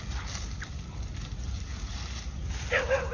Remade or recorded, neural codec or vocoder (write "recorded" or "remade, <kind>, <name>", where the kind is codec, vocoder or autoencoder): recorded